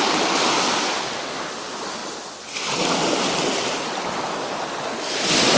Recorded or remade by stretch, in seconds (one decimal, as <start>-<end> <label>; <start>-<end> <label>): 0.0-5.6 recorded